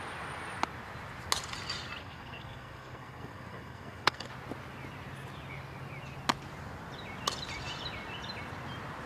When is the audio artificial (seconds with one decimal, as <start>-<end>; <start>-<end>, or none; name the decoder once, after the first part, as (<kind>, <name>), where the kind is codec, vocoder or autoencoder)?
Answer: 2.0-4.3 (codec, SNAC)